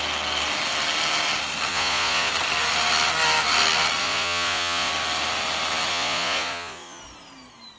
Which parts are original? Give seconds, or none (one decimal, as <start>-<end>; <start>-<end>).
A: 0.0-1.7; 2.3-4.0; 4.9-5.9; 7.0-7.8